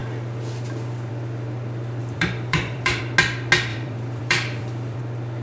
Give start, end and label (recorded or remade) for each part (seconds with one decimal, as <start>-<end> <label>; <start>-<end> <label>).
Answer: 0.0-2.0 recorded; 2.0-3.0 remade; 3.0-3.7 recorded; 3.7-5.0 remade; 5.0-5.4 recorded